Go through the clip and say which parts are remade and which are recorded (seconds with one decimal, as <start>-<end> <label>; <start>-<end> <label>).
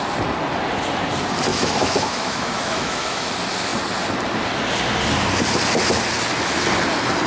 0.0-1.5 recorded; 1.5-3.3 remade; 3.3-7.3 recorded